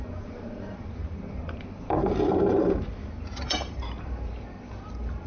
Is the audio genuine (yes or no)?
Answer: no